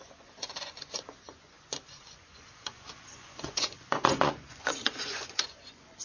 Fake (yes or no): yes